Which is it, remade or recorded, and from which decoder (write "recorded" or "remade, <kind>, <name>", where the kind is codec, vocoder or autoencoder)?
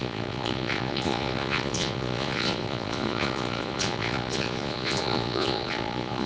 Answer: remade, vocoder, Vocos